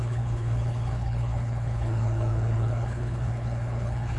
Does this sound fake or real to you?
fake